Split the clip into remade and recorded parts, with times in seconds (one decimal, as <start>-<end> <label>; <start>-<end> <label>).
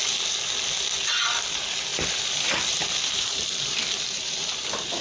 0.0-1.9 recorded; 1.9-5.0 remade